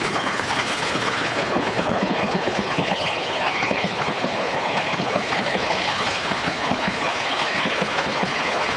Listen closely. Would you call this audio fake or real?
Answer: fake